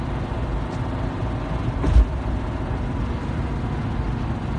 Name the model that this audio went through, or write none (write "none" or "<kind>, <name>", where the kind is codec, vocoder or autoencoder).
none